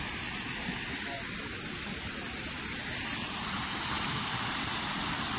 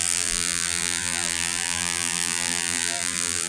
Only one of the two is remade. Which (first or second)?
second